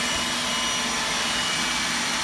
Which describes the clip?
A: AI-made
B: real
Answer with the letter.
B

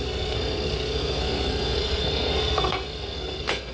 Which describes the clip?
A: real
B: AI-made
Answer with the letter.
B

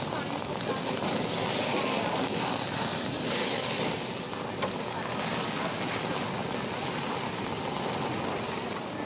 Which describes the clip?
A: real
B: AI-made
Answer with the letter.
A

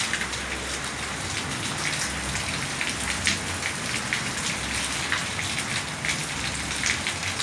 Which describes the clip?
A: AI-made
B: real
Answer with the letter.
B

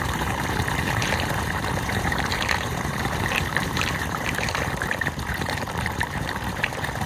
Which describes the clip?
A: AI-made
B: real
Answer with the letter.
A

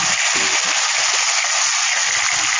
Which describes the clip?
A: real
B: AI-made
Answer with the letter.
A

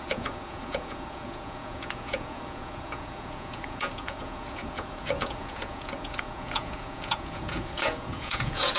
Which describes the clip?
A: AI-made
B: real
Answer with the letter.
A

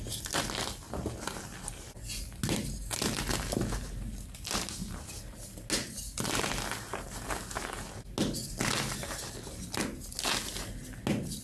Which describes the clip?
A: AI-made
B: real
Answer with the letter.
B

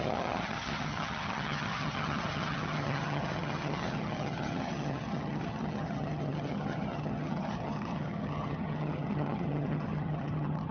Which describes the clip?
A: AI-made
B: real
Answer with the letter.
A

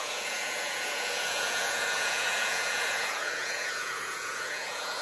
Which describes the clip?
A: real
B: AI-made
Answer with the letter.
B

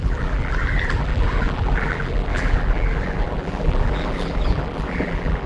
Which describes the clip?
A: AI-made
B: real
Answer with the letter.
A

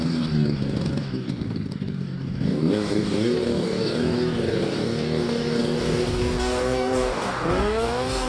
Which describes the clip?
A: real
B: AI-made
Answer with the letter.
B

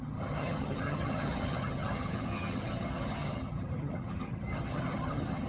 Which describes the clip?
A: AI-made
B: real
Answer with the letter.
A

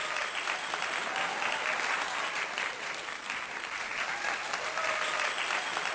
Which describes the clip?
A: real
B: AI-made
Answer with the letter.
B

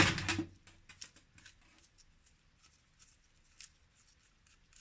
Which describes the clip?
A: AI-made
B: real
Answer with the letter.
B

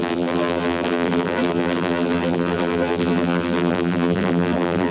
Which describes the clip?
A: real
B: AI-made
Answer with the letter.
B